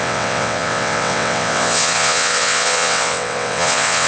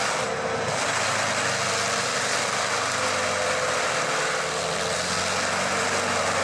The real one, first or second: second